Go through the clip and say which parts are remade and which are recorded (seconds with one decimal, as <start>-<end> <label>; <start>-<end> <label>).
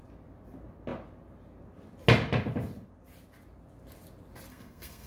0.0-4.5 recorded; 4.5-5.1 remade